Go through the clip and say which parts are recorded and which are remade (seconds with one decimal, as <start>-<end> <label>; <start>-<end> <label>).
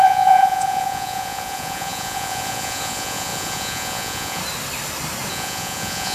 0.0-4.4 remade; 4.4-5.3 recorded; 5.3-6.1 remade